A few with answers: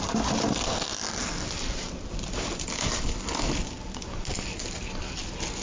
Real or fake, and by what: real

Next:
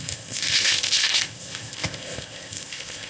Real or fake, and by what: fake, codec, ZipCodec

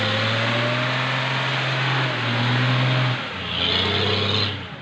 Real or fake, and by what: real